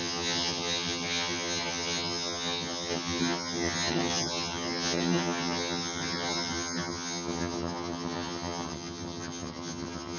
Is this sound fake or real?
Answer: fake